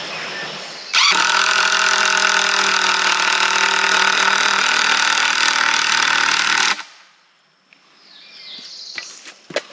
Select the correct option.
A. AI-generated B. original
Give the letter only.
B